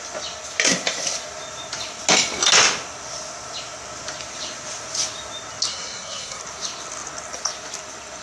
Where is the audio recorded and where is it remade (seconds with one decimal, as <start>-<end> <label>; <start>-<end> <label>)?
0.0-5.7 recorded; 5.7-6.4 remade; 6.4-8.2 recorded